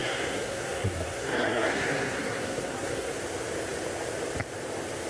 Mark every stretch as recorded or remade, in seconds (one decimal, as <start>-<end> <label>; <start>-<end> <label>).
0.0-3.1 remade; 3.1-5.1 recorded